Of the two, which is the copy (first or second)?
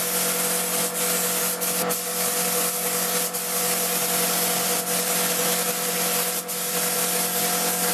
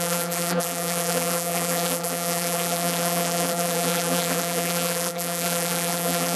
second